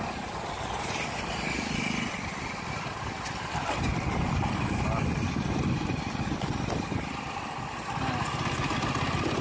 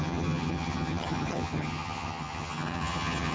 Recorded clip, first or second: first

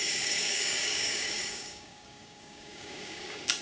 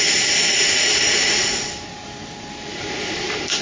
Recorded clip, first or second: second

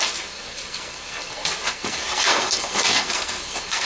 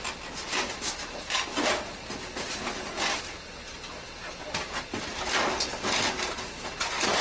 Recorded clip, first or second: second